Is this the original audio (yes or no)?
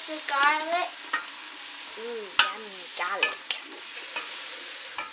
yes